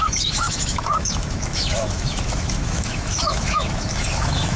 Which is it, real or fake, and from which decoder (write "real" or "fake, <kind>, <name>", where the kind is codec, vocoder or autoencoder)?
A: fake, autoencoder, DAC-VAE